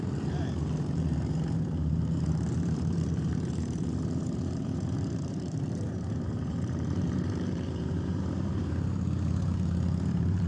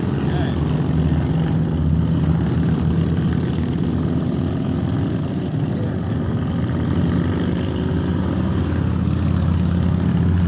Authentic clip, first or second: second